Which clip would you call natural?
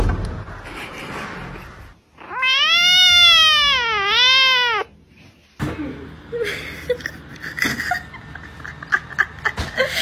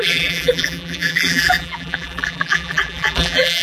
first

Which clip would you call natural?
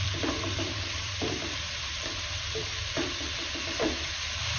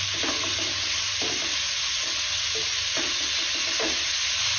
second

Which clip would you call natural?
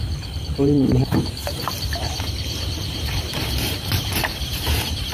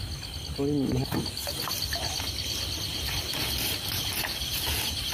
second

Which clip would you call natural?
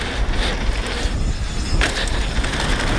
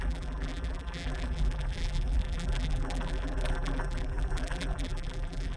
first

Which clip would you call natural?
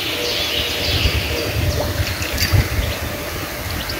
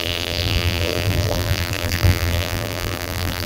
first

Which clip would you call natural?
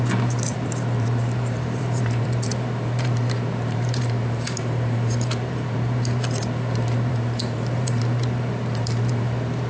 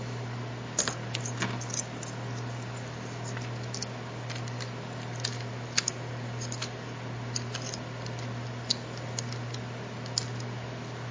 second